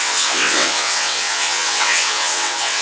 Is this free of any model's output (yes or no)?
no